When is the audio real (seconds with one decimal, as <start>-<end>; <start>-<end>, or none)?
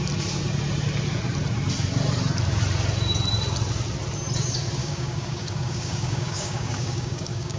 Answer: 0.0-4.8